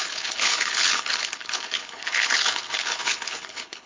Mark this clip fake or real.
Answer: fake